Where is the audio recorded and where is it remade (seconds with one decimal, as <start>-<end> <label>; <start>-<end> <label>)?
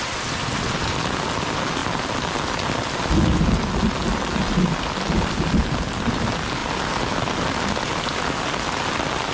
0.0-9.3 recorded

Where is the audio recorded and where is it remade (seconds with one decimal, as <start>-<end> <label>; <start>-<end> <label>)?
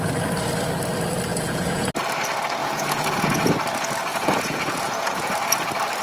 0.0-1.3 recorded; 1.3-1.9 remade; 1.9-2.6 recorded; 2.6-3.5 remade; 3.5-4.1 recorded; 4.1-5.3 remade; 5.3-6.0 recorded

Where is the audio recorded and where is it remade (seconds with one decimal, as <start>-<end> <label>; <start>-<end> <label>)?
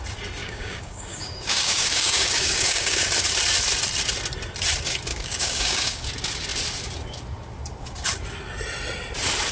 0.0-0.4 recorded; 0.4-3.1 remade; 3.1-5.1 recorded; 5.1-6.0 remade; 6.0-9.5 recorded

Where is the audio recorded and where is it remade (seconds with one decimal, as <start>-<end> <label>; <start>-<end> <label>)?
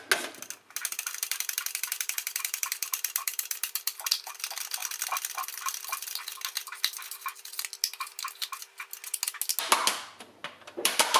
0.0-0.8 recorded; 0.8-4.3 remade; 4.3-10.4 recorded; 10.4-11.2 remade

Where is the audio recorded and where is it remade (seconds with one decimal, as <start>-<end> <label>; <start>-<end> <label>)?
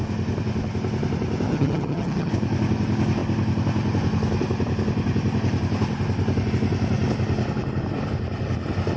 0.0-1.5 recorded; 1.5-2.3 remade; 2.3-9.0 recorded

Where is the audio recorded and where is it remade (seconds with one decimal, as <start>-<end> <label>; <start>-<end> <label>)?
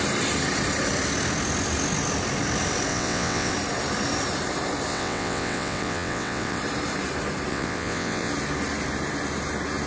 0.0-2.9 recorded; 2.9-3.5 remade; 3.5-4.9 recorded; 4.9-6.6 remade; 6.6-7.5 recorded; 7.5-8.3 remade; 8.3-9.9 recorded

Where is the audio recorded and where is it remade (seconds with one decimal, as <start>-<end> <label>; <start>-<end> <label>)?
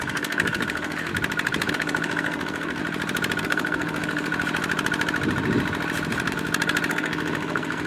0.0-1.1 remade; 1.1-1.7 recorded; 1.7-2.8 remade; 2.8-3.4 recorded; 3.4-4.3 remade; 4.3-6.9 recorded; 6.9-7.9 remade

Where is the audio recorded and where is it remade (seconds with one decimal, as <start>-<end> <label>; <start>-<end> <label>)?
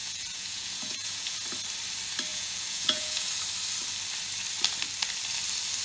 0.0-1.4 remade; 1.4-2.3 recorded; 2.3-3.3 remade; 3.3-5.8 recorded